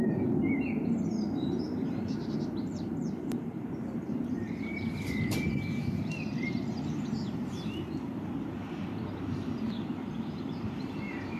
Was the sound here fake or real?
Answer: fake